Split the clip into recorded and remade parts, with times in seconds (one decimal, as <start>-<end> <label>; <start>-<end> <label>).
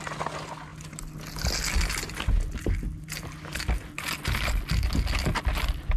0.0-6.0 recorded